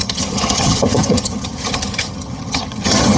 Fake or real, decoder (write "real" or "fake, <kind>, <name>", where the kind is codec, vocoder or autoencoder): fake, vocoder, HiFi-GAN